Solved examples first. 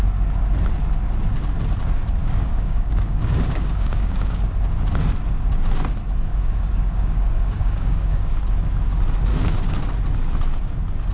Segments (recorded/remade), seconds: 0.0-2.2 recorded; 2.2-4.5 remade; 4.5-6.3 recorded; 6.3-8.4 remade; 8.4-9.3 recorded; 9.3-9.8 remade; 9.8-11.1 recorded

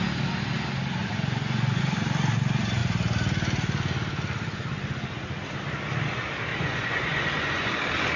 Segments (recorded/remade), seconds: 0.0-1.0 recorded; 1.0-1.8 remade; 1.8-6.5 recorded; 6.5-7.7 remade; 7.7-8.2 recorded

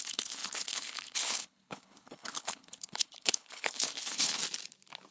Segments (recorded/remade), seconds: 0.0-4.4 remade; 4.4-5.1 recorded

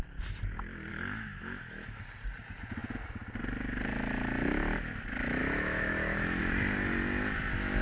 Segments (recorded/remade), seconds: 0.0-0.9 recorded; 0.9-2.0 remade; 2.0-5.4 recorded; 5.4-6.4 remade; 6.4-7.8 recorded

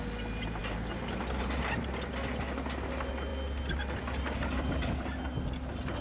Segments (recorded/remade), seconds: 0.0-6.0 recorded

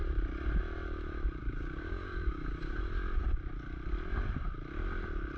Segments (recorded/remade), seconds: 0.0-1.4 recorded; 1.4-2.8 remade; 2.8-5.4 recorded

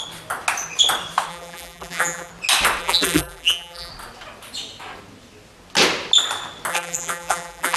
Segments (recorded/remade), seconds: 0.0-1.3 recorded; 1.3-2.3 remade; 2.3-2.8 recorded; 2.8-3.9 remade; 3.9-6.7 recorded; 6.7-7.8 remade